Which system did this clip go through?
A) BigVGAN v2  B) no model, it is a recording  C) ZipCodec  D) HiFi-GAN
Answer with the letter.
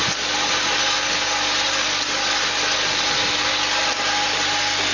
B